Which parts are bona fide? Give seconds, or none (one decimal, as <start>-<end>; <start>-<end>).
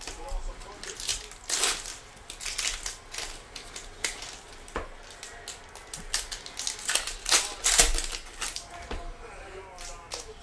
0.0-10.4